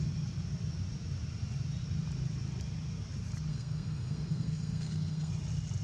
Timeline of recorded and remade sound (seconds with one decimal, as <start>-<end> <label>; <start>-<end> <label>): 0.0-3.5 recorded; 3.5-5.3 remade; 5.3-5.8 recorded